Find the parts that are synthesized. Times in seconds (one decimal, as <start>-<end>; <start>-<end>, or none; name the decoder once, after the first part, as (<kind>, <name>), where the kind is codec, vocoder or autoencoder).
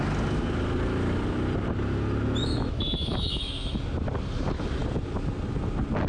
2.4-3.8 (autoencoder, DAC-VAE)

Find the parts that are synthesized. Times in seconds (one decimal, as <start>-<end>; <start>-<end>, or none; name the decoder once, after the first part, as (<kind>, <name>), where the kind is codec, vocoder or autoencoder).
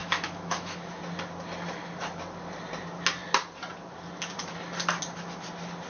0.0-1.0 (autoencoder, DAC-VAE)